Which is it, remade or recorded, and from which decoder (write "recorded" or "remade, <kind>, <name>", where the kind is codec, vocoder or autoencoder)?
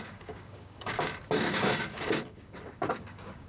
remade, codec, DAC